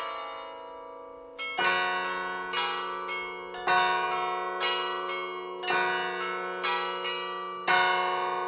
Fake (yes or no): no